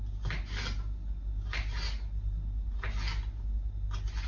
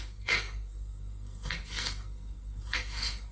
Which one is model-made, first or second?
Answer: second